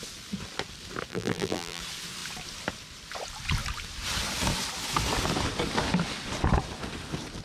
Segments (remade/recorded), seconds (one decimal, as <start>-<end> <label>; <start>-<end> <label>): 0.0-1.1 recorded; 1.1-1.8 remade; 1.8-7.4 recorded

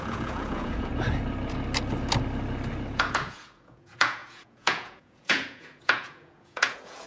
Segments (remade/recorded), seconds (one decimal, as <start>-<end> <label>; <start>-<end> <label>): 0.0-0.9 remade; 0.9-2.9 recorded; 2.9-7.1 remade

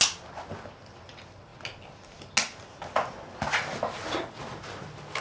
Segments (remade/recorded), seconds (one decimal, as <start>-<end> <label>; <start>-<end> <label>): 0.0-5.2 recorded

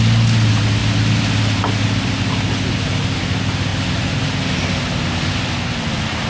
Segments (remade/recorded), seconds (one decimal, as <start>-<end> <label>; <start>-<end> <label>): 0.0-6.3 recorded

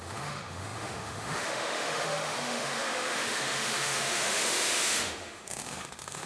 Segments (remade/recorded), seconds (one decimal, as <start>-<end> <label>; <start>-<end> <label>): 0.0-6.3 remade